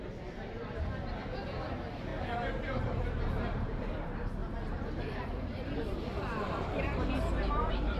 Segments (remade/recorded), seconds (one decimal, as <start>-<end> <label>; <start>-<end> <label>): 0.0-1.2 remade; 1.2-1.7 recorded; 1.7-2.1 remade; 2.1-2.8 recorded; 2.8-4.4 remade; 4.4-5.0 recorded; 5.0-8.0 remade